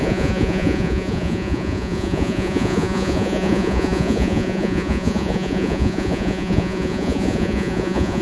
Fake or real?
fake